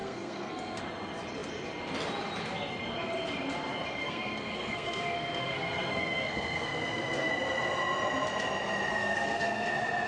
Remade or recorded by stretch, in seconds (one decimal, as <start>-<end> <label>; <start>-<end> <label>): 0.0-0.8 remade; 0.8-4.0 recorded; 4.0-7.3 remade; 7.3-8.9 recorded; 8.9-9.7 remade; 9.7-10.1 recorded